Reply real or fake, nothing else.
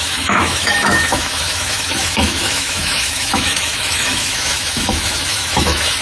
fake